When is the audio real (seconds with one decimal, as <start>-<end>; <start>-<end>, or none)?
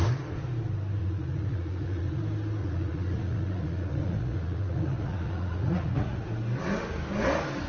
0.0-1.0; 2.2-2.6; 6.3-7.7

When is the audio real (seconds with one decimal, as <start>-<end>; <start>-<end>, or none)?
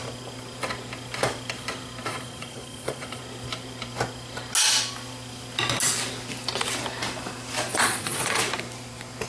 0.0-2.1; 3.2-7.7; 8.4-9.3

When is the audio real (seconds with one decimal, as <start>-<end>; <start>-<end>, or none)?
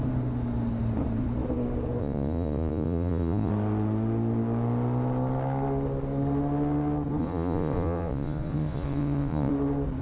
0.0-2.0; 3.5-7.2; 9.5-10.0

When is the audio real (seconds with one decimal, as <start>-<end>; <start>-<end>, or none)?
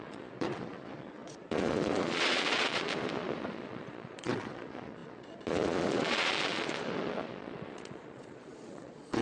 none